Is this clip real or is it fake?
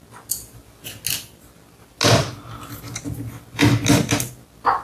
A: real